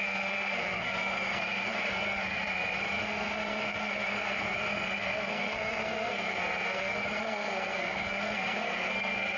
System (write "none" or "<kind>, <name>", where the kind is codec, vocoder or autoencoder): codec, SNAC